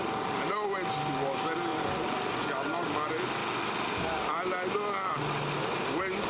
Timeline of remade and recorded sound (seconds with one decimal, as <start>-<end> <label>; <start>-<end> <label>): 0.0-6.3 recorded